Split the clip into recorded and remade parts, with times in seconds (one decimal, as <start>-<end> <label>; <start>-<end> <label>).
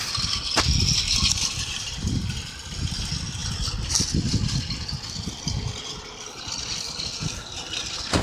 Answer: 0.0-8.2 recorded